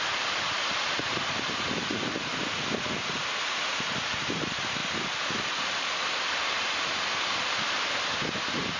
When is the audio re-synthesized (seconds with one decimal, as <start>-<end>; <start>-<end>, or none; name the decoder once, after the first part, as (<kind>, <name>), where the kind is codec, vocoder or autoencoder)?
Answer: 0.0-2.3 (vocoder, BigVGAN v2); 3.1-4.8; 6.0-8.8